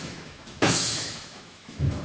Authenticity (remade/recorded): remade